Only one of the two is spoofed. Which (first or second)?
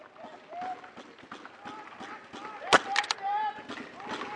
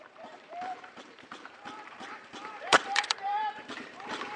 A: second